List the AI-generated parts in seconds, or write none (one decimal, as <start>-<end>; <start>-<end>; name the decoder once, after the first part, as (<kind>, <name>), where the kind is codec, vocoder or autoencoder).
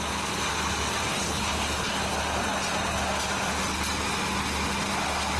1.1-1.9 (codec, HILCodec)